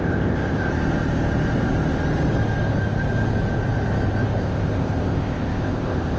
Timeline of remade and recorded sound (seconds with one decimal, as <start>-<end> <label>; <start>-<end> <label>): 0.0-0.7 remade; 0.7-4.4 recorded; 4.4-6.2 remade